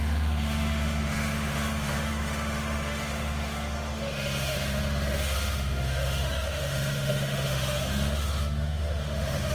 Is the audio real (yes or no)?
no